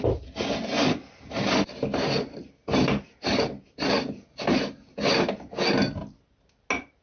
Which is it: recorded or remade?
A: recorded